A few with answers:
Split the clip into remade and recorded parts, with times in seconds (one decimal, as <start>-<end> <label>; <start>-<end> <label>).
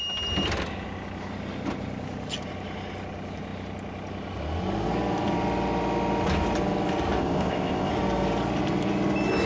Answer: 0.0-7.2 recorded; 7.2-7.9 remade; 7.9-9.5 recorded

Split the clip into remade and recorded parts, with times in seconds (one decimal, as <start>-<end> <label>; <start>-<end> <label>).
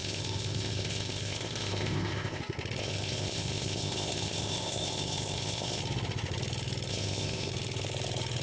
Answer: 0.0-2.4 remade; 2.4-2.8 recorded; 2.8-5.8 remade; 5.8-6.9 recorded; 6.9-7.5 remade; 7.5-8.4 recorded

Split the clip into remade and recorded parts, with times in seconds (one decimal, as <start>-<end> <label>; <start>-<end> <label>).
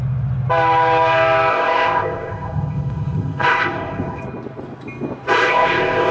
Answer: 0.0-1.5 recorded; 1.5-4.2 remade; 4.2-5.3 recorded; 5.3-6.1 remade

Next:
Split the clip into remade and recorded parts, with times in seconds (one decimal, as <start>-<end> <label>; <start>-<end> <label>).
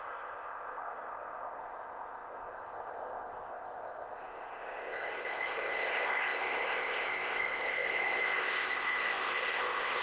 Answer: 0.0-10.0 remade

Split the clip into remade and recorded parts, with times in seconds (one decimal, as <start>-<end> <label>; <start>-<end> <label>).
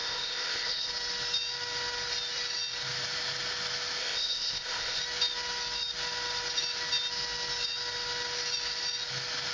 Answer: 0.0-0.9 remade; 0.9-4.0 recorded; 4.0-5.0 remade; 5.0-9.5 recorded